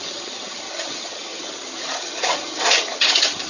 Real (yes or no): no